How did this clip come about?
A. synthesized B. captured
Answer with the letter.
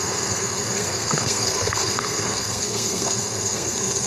A